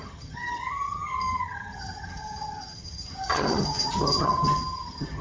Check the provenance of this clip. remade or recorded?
remade